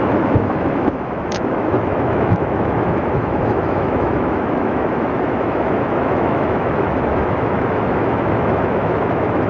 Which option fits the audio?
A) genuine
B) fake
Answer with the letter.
B